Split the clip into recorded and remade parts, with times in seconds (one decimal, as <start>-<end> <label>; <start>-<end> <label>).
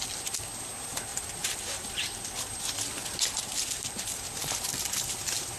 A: 0.0-1.1 recorded; 1.1-2.6 remade; 2.6-3.0 recorded; 3.0-3.5 remade; 3.5-4.4 recorded; 4.4-4.9 remade; 4.9-5.6 recorded